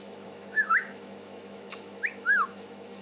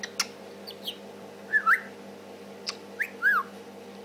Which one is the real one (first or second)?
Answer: second